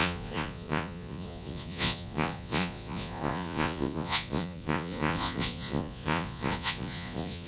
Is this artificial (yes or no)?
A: yes